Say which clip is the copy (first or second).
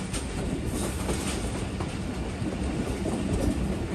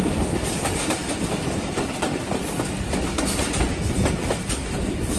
second